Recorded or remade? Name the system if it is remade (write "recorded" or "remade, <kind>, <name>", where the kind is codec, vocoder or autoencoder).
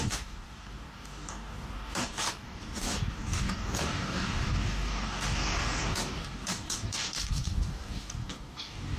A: remade, codec, DAC